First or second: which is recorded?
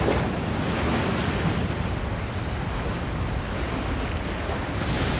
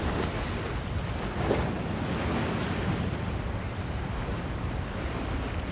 first